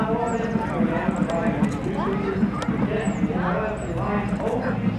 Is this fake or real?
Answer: real